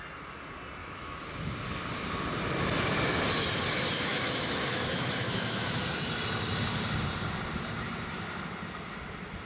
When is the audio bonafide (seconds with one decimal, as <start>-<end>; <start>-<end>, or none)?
0.0-0.8; 1.3-4.1; 5.8-9.5